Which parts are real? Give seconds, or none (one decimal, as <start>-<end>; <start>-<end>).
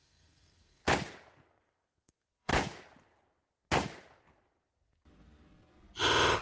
0.8-1.5; 2.5-6.4